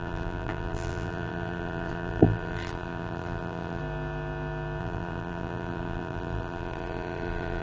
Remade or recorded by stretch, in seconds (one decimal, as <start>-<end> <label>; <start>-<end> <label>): 0.0-3.8 remade; 3.8-4.8 recorded; 4.8-7.6 remade